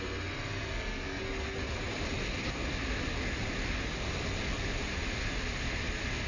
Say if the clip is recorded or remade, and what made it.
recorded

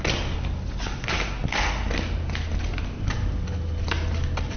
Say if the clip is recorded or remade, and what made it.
recorded